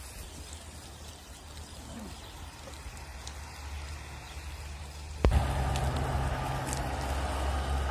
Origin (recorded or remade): recorded